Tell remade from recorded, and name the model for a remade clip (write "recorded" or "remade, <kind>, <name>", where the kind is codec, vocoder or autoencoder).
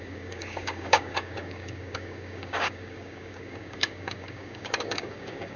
remade, codec, DAC